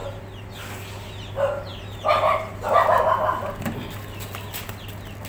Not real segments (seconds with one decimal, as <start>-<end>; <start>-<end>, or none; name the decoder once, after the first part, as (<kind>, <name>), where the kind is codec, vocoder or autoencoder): none